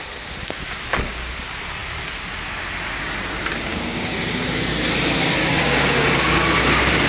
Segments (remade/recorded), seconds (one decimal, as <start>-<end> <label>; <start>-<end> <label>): 0.0-3.7 recorded; 3.7-4.6 remade; 4.6-5.4 recorded; 5.4-7.1 remade